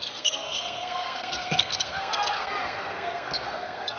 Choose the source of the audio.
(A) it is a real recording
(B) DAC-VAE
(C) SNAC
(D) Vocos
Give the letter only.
C